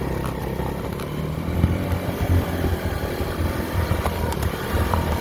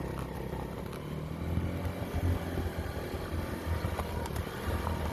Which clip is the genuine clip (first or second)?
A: second